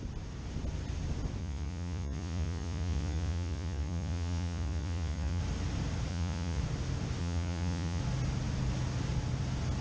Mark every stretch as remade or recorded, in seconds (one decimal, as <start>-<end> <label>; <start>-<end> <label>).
0.0-1.4 recorded; 1.4-5.4 remade; 5.4-6.1 recorded; 6.1-6.6 remade; 6.6-7.2 recorded; 7.2-8.0 remade; 8.0-9.8 recorded